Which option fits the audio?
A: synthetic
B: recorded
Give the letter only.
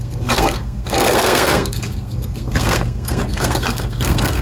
A